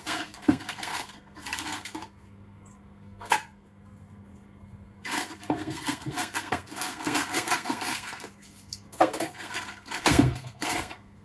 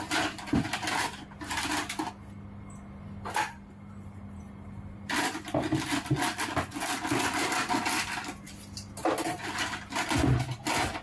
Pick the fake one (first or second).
first